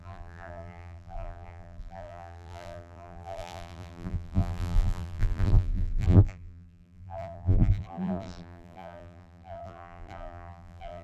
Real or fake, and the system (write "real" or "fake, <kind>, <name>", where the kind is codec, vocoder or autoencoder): fake, vocoder, BigVGAN v2